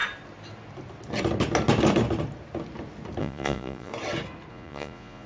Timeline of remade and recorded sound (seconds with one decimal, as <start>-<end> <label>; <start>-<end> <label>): 0.0-3.2 recorded; 3.2-3.9 remade; 3.9-4.5 recorded; 4.5-5.3 remade